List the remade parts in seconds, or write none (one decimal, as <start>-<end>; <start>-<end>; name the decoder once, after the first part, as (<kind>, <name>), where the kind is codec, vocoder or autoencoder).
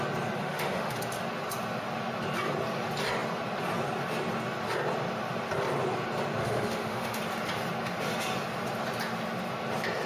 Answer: 0.4-1.0 (autoencoder, DAC-VAE); 6.4-7.2